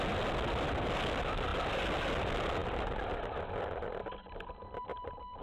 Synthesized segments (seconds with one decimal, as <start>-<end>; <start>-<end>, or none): none